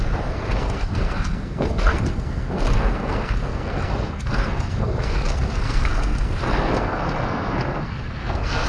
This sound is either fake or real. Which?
fake